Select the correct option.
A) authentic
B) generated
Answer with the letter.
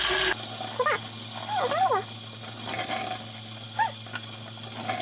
A